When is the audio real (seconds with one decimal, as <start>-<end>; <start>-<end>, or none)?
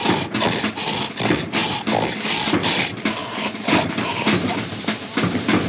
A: 0.0-3.2